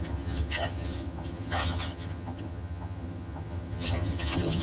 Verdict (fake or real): fake